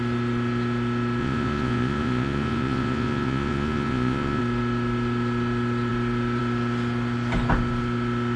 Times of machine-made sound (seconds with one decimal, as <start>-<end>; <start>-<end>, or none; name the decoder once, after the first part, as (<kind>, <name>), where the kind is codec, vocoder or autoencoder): 1.2-4.4 (vocoder, Vocos)